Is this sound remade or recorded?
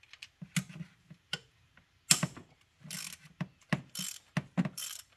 recorded